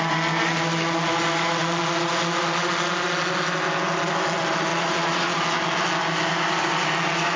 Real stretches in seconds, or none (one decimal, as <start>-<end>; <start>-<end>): 0.0-4.7; 5.4-7.4